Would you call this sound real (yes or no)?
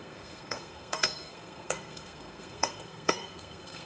no